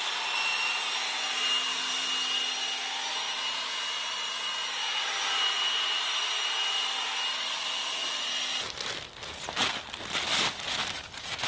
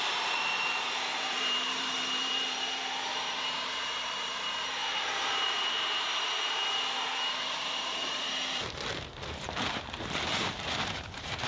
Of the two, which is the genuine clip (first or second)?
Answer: first